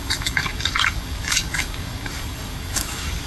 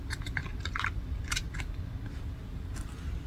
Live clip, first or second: second